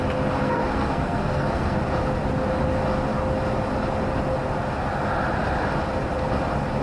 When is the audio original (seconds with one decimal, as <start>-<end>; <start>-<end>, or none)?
0.0-0.4; 1.8-6.8